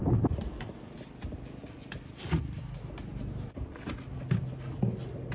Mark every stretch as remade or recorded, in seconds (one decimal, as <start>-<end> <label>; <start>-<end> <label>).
0.0-5.3 recorded